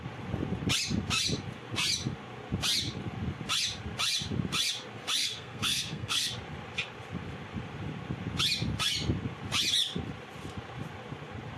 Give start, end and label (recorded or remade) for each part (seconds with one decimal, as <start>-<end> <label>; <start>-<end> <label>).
0.0-5.2 recorded; 5.2-6.3 remade; 6.3-11.6 recorded